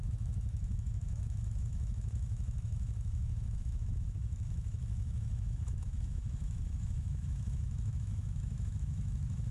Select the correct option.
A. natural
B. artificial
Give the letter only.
B